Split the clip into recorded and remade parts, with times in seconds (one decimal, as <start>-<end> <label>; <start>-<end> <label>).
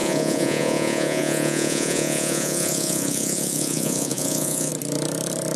0.0-4.7 remade; 4.7-5.6 recorded